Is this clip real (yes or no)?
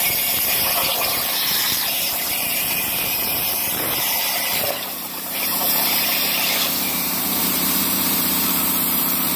no